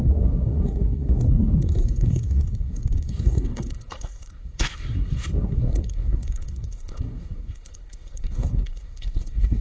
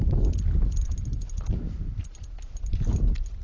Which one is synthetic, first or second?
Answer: first